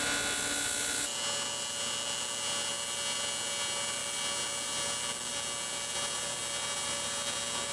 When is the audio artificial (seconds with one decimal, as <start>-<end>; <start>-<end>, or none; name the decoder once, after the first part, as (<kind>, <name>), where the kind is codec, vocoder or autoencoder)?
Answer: none